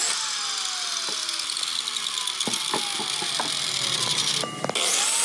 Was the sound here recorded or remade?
recorded